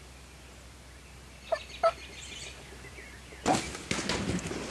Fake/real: real